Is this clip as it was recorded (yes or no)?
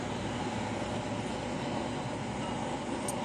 yes